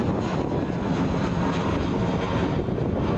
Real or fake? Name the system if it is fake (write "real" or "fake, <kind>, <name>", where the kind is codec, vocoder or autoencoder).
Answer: real